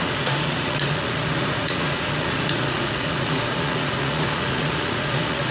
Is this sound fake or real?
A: fake